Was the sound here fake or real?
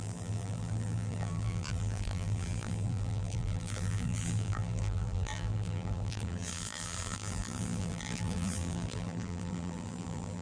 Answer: fake